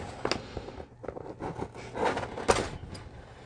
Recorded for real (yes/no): yes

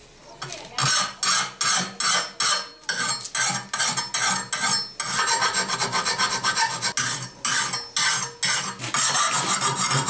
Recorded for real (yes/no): yes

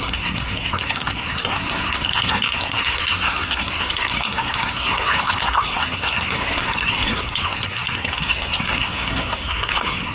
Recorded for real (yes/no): no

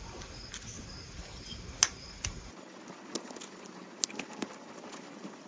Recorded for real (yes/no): yes